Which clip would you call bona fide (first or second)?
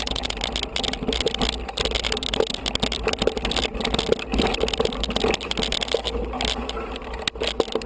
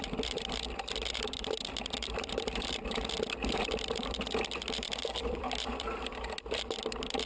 first